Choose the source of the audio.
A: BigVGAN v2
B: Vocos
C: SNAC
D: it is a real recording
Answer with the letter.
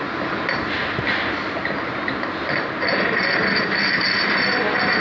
D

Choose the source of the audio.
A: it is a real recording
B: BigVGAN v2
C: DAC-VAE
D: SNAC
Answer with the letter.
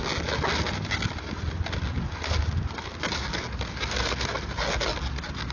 A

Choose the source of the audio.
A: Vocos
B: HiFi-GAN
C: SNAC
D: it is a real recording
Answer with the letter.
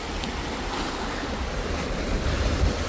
D